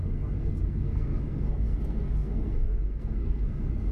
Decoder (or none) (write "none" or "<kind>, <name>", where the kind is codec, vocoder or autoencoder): codec, SNAC